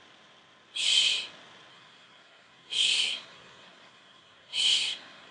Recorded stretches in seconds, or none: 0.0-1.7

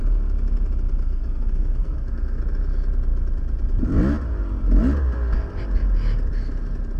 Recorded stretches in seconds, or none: 0.0-1.0; 2.4-7.0

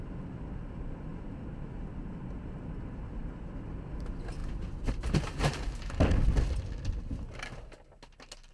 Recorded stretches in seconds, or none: 0.0-8.5

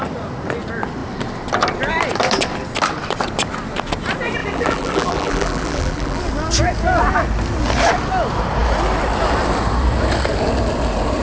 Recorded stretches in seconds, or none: 0.0-4.4; 6.2-11.2

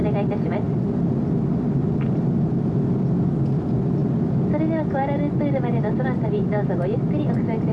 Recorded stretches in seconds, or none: 0.0-7.7